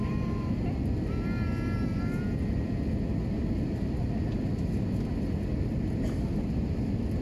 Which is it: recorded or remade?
recorded